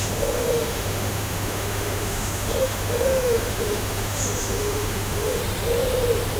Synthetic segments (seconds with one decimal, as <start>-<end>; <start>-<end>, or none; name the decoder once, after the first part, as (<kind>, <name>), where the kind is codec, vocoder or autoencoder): 0.0-5.4 (autoencoder, DAC-VAE)